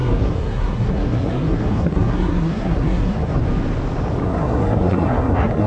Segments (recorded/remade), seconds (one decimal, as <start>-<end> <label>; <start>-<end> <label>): 0.0-3.4 remade; 3.4-4.2 recorded; 4.2-5.7 remade